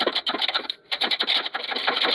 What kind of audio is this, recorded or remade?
recorded